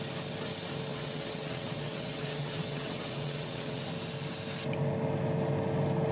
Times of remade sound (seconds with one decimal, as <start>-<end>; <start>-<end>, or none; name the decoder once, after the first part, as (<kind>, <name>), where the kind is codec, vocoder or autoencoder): 0.9-3.8 (vocoder, WaveNeXt)